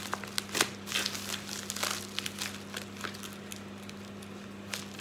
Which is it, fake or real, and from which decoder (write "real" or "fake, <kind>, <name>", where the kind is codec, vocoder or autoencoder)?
real